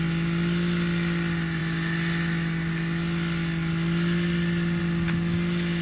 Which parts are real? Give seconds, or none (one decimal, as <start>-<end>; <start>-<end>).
0.0-5.8